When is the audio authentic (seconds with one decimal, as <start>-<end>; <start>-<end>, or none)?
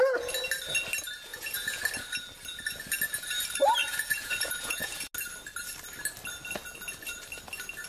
0.0-1.3; 1.8-3.8; 5.1-7.9